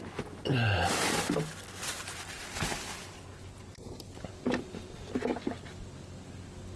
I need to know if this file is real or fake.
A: real